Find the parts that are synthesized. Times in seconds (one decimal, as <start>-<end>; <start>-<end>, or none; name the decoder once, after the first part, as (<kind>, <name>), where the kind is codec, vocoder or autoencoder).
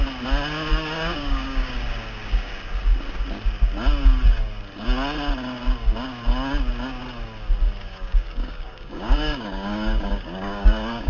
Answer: 0.7-1.7 (codec, DAC); 7.8-11.1